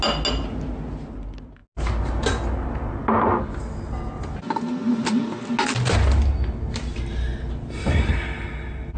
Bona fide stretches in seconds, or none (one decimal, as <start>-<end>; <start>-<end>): 0.0-9.0